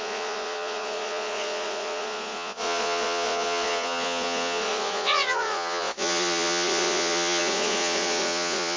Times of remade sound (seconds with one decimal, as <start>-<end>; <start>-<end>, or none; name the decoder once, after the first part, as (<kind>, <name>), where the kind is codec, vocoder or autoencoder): 0.0-8.8 (vocoder, Vocos)